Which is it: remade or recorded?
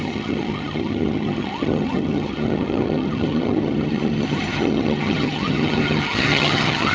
remade